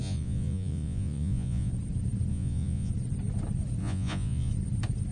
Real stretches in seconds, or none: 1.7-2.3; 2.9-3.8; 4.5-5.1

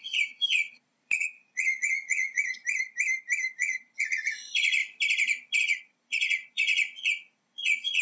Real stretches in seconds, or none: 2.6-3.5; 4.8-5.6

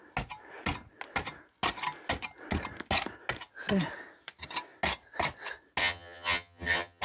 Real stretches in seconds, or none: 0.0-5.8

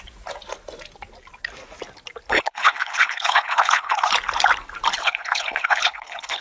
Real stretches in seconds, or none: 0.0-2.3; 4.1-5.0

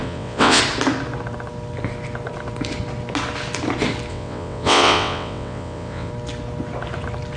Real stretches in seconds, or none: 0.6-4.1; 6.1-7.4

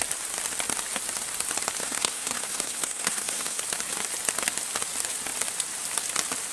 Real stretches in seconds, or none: 0.0-1.8; 3.6-6.5

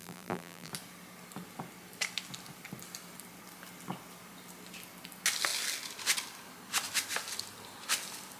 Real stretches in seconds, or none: 0.7-8.4